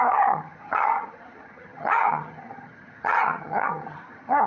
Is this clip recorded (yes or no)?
no